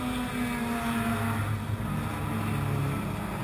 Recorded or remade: recorded